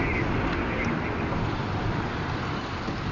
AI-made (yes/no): yes